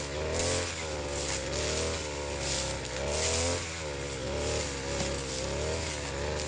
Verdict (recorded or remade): recorded